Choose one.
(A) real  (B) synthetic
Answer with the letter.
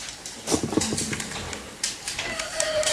B